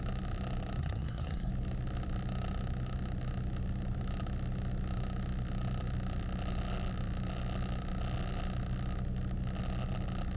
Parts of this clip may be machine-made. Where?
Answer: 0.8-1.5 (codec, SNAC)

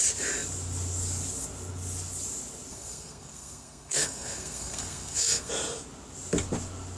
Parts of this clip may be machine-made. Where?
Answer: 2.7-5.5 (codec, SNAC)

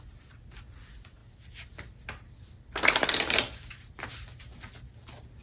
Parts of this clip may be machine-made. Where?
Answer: none